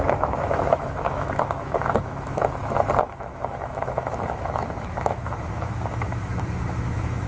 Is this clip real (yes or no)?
no